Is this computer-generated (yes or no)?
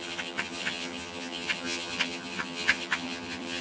yes